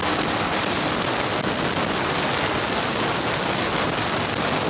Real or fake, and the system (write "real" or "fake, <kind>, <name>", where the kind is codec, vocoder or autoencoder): real